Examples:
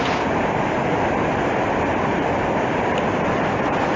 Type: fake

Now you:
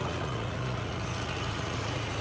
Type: fake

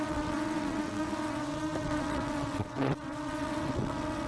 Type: fake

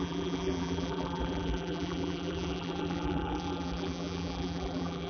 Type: fake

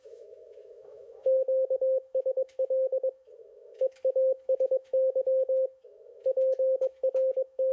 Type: fake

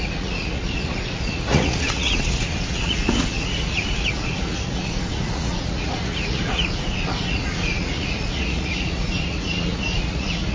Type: fake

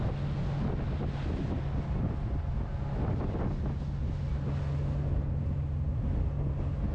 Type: real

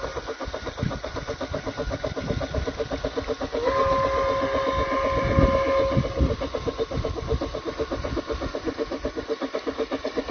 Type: real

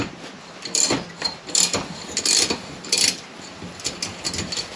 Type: real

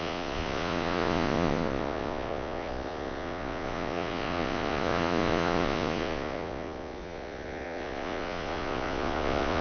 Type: fake